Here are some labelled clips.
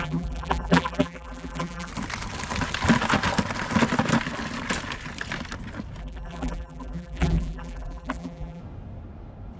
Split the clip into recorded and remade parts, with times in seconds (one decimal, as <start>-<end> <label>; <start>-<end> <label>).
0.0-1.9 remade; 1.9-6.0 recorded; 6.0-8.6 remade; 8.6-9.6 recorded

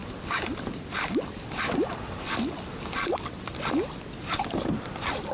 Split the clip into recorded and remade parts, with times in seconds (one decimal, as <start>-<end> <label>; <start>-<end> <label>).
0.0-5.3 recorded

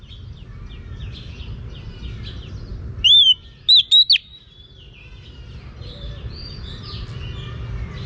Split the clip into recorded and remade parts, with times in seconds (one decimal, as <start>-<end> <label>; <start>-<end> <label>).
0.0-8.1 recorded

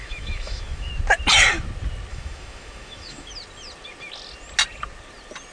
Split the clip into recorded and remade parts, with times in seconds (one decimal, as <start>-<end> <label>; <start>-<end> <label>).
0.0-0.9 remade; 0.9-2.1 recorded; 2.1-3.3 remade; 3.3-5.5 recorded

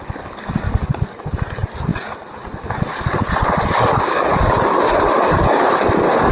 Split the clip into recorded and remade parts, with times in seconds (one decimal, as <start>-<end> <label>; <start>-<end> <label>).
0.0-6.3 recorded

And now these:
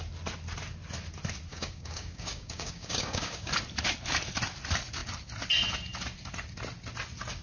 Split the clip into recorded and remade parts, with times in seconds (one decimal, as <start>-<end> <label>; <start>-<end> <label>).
0.0-1.5 recorded; 1.5-3.5 remade; 3.5-7.4 recorded